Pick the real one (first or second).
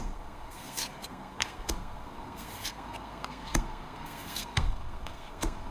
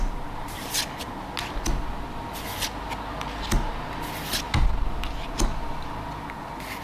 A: second